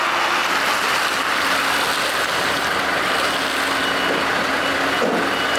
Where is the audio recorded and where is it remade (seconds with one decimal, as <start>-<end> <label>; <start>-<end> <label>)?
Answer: 0.0-5.6 recorded